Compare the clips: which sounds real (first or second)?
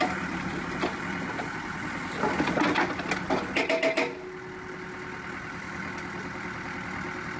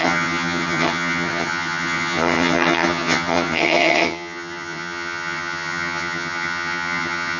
first